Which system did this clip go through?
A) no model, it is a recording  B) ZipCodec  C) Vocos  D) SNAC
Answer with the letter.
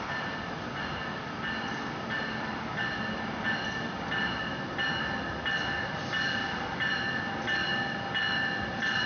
A